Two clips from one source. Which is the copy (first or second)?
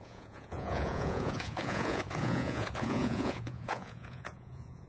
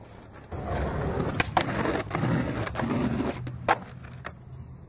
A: first